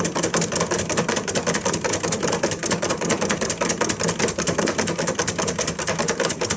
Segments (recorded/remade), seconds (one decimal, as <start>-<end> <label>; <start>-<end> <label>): 0.0-6.6 recorded